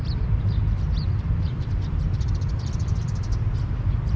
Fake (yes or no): yes